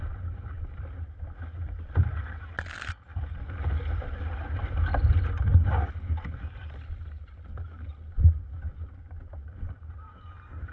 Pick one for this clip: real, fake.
real